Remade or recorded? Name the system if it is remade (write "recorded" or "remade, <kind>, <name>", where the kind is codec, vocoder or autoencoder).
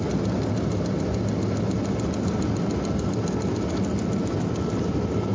recorded